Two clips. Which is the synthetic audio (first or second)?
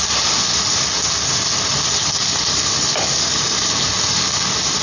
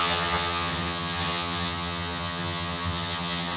second